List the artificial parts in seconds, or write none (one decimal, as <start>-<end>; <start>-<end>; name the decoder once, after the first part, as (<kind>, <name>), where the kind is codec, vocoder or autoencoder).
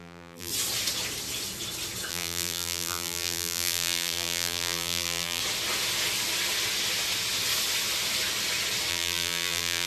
0.0-0.5 (vocoder, BigVGAN v2); 2.1-5.4; 8.9-9.9